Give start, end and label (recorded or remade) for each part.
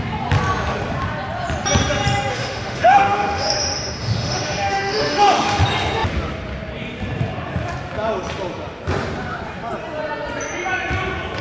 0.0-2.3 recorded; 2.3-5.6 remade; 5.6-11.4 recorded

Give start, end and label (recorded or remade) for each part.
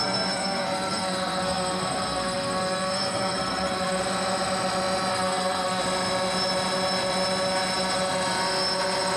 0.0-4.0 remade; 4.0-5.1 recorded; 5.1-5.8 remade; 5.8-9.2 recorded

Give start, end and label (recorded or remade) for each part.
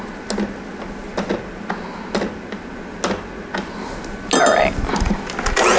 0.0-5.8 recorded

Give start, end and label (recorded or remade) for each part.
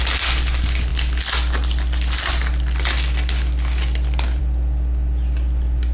0.0-5.9 recorded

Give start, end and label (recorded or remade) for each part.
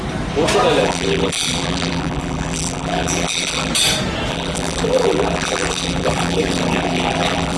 0.0-0.8 recorded; 0.8-3.7 remade; 3.7-4.3 recorded; 4.3-7.6 remade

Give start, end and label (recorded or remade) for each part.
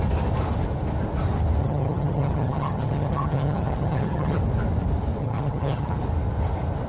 0.0-1.6 recorded; 1.6-4.4 remade; 4.4-5.2 recorded; 5.2-6.0 remade; 6.0-6.9 recorded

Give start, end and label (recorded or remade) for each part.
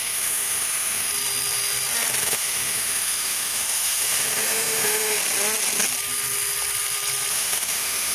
0.0-1.1 remade; 1.1-2.2 recorded; 2.2-5.2 remade; 5.2-7.3 recorded; 7.3-8.1 remade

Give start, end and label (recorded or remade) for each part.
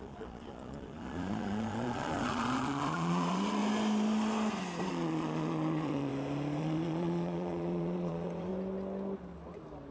0.0-3.6 remade; 3.6-4.9 recorded; 4.9-6.1 remade; 6.1-6.6 recorded; 6.6-8.5 remade; 8.5-9.9 recorded